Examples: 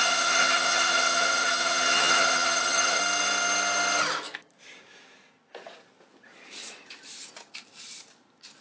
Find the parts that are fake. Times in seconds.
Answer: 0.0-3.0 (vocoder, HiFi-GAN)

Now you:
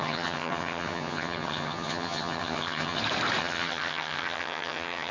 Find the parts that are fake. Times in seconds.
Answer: 0.0-3.0 (vocoder, HiFi-GAN); 3.4-5.1